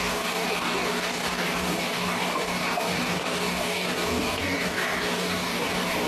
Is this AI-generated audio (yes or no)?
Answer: yes